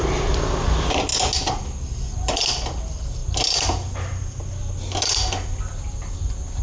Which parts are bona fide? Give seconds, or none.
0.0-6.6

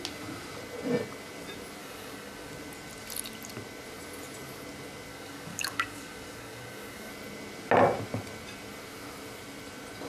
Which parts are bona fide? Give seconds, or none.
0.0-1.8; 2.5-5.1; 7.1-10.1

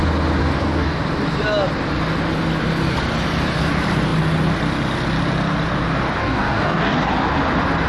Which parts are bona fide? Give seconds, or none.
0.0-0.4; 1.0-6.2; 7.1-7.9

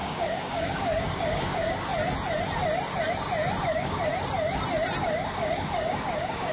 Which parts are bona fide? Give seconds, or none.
1.9-3.6; 4.1-5.0

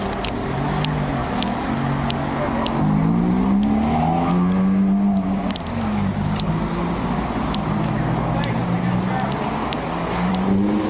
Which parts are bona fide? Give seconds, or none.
0.0-1.2; 2.8-5.9; 6.5-9.6; 10.3-10.9